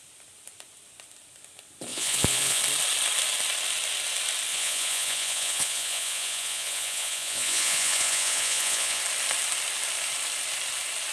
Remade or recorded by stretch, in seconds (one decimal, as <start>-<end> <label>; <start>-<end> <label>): 0.0-1.9 recorded; 1.9-2.6 remade; 2.6-4.5 recorded; 4.5-9.0 remade; 9.0-11.1 recorded